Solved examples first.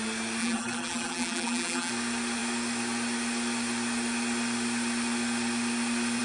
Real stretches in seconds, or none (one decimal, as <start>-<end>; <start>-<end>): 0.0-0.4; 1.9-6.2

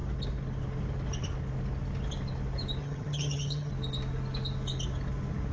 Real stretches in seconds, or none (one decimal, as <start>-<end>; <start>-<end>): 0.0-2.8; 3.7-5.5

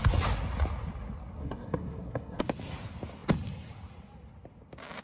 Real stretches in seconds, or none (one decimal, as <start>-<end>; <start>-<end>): 0.0-1.4; 2.4-5.0

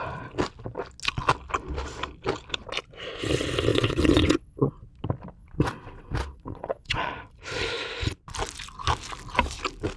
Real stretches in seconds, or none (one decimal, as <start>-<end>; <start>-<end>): 0.0-3.7; 4.7-5.4; 7.1-10.0

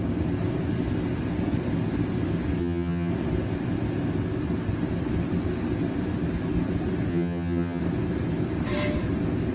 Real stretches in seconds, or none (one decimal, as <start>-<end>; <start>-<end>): 0.0-2.6; 3.1-7.1; 7.8-9.5